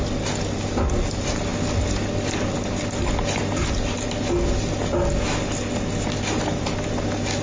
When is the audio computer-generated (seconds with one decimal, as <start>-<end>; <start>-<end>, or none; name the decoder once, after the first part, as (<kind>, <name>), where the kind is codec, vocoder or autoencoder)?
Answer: none